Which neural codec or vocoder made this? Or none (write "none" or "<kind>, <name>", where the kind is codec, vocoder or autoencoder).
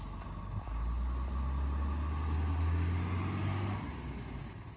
none